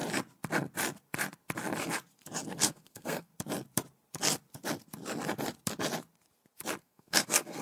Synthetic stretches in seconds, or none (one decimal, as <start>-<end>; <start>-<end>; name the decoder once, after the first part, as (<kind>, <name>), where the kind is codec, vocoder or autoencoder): 2.5-3.3 (codec, SNAC); 6.8-7.6